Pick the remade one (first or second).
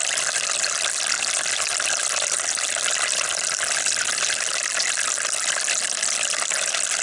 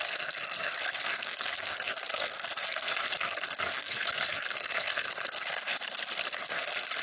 second